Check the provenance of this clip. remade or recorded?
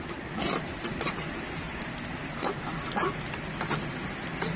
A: recorded